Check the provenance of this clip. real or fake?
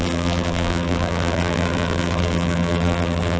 fake